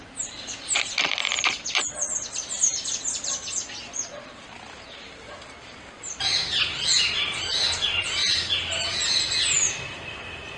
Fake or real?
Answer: real